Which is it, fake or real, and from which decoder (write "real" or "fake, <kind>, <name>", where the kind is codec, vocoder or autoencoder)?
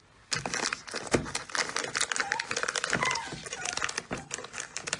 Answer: real